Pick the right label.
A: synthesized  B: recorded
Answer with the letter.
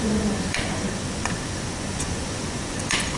A